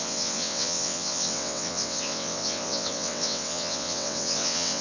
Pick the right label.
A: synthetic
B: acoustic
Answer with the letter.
A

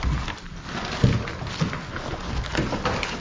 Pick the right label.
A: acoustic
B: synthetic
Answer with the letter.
A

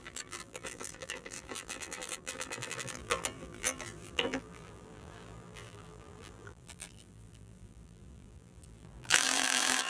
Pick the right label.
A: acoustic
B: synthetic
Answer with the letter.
B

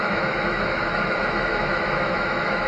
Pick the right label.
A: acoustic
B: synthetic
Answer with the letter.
B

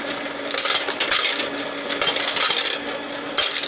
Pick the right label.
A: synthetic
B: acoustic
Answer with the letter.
B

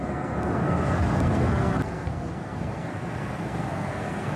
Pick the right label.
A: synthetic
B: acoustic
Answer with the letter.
A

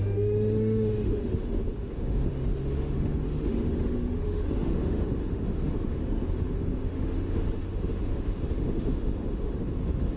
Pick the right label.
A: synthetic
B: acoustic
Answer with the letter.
A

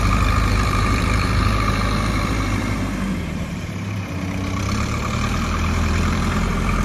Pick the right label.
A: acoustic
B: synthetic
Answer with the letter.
B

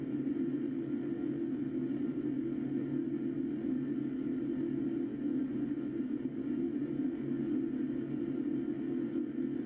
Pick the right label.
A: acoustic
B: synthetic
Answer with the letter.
A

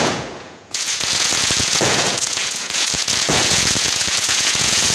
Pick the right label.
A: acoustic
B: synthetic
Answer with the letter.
B